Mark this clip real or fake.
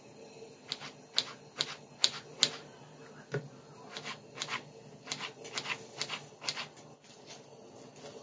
real